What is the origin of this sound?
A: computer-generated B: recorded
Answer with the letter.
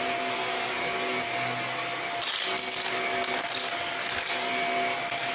B